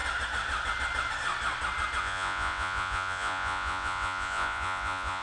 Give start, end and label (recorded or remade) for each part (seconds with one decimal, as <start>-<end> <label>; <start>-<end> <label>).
0.0-2.0 recorded; 2.0-5.2 remade